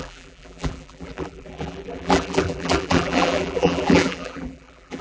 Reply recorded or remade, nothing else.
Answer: remade